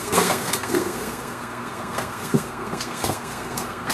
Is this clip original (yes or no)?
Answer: no